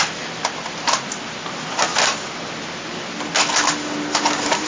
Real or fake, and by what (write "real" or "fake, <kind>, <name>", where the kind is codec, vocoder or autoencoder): real